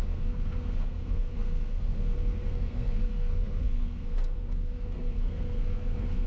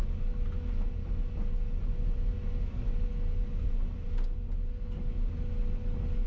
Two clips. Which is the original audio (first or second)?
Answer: second